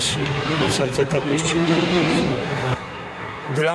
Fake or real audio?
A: fake